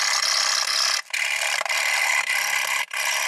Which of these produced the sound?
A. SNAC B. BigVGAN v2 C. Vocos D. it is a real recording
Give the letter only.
D